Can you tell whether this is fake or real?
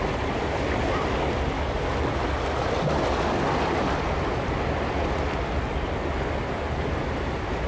real